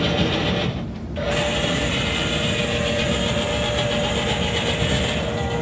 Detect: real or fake real